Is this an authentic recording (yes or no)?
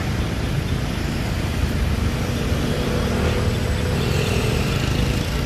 yes